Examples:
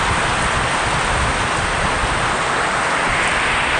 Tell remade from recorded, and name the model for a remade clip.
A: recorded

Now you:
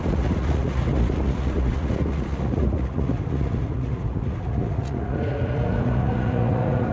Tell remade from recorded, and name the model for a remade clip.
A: remade, vocoder, Vocos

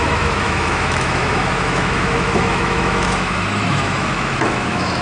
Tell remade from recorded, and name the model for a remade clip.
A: remade, autoencoder, DAC-VAE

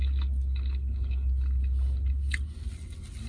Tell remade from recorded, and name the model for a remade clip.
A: recorded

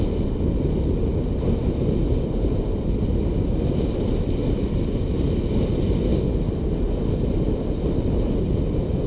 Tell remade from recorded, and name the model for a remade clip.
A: recorded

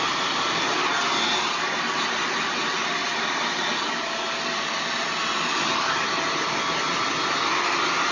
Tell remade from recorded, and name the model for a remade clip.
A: recorded